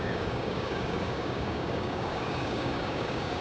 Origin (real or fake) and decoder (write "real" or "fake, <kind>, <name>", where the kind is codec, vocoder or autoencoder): fake, codec, DAC